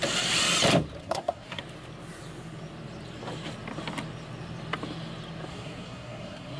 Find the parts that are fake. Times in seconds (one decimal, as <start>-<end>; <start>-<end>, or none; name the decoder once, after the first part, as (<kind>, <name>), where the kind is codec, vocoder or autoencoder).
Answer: 1.0-1.6 (codec, SNAC); 5.5-6.6